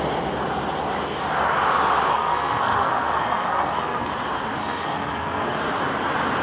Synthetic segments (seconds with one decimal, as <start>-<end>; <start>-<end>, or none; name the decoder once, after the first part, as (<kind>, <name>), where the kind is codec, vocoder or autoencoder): 2.1-4.1 (codec, SNAC); 4.6-5.6

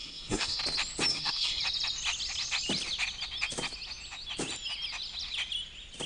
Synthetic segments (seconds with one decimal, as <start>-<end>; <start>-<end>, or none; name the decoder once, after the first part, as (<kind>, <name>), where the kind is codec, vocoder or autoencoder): 0.0-0.6 (codec, SNAC); 1.1-1.6

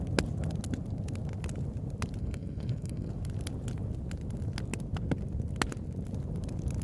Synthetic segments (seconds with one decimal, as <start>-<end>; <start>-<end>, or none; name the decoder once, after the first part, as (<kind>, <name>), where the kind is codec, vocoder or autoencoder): 2.2-3.1 (codec, SNAC)

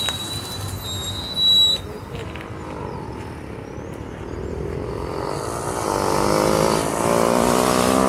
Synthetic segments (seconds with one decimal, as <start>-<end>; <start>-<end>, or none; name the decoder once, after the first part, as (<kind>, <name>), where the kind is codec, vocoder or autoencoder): none

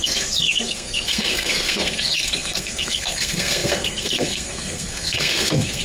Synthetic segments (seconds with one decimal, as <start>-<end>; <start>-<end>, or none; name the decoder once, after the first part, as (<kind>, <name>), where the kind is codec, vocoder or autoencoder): 0.0-5.8 (codec, SNAC)

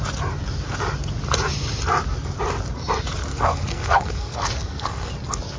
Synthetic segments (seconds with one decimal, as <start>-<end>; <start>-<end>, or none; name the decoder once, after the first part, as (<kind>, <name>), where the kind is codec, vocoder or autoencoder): 3.3-5.1 (codec, SNAC)

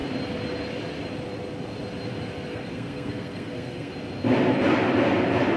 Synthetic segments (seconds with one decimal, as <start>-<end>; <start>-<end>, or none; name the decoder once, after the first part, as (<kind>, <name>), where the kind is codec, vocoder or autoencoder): 2.5-3.9 (codec, SNAC)